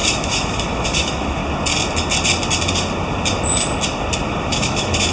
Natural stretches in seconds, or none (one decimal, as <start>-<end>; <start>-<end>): 1.4-4.5